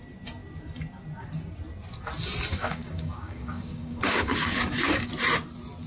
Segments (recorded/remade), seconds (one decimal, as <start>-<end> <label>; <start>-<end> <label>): 0.0-2.5 recorded; 2.5-5.1 remade; 5.1-5.9 recorded